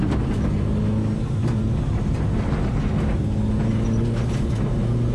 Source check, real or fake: real